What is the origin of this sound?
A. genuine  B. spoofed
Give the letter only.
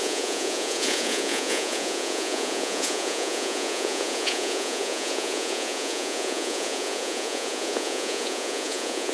B